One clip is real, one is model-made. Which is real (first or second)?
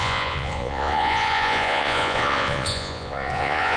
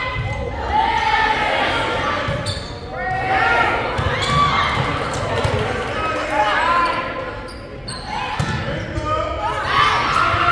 second